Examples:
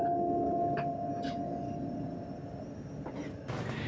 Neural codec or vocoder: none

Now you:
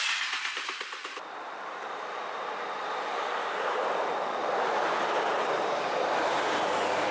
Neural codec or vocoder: vocoder, BigVGAN v2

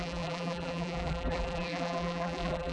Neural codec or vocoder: vocoder, BigVGAN v2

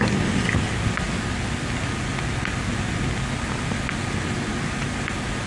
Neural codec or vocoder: none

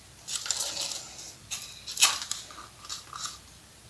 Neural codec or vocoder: none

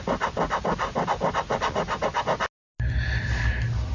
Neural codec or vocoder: none